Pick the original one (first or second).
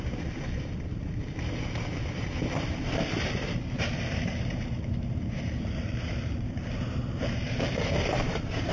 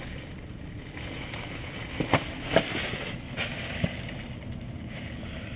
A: second